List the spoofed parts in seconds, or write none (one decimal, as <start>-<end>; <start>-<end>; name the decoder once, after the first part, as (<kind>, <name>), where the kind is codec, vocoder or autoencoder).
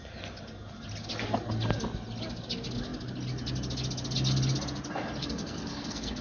5.2-6.2 (codec, SNAC)